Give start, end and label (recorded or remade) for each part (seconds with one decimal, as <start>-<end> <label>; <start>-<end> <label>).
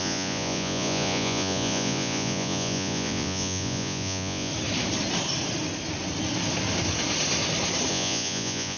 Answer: 0.0-4.5 remade; 4.5-7.9 recorded; 7.9-8.8 remade